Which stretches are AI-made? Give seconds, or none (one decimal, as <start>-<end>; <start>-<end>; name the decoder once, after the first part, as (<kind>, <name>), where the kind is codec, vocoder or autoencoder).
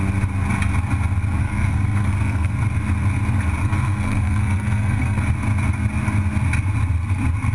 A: 1.4-2.5 (codec, SNAC); 3.6-5.2